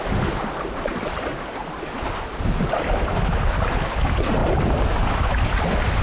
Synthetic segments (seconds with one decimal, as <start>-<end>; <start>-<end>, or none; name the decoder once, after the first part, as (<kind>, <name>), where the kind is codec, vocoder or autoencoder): 0.0-1.6 (vocoder, BigVGAN v2); 2.7-4.4; 5.1-6.0